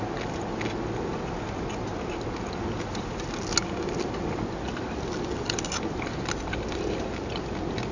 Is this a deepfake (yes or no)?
no